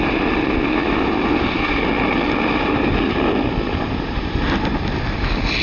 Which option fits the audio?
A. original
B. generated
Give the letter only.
A